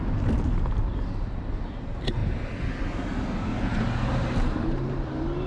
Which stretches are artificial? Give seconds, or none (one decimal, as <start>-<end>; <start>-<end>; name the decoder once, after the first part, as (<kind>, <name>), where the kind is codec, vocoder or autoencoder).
none